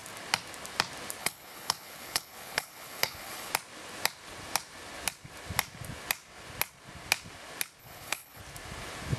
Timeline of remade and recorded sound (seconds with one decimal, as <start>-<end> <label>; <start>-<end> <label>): 0.0-1.2 recorded; 1.2-3.5 remade; 3.5-7.8 recorded; 7.8-8.4 remade; 8.4-9.2 recorded